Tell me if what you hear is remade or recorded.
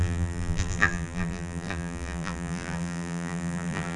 remade